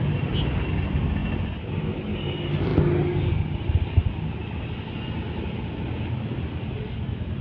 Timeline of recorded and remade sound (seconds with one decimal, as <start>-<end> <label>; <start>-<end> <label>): 0.0-7.4 recorded